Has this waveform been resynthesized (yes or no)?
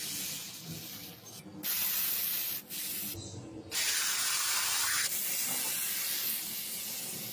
no